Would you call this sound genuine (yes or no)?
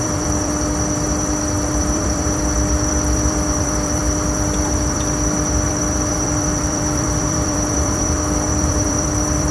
no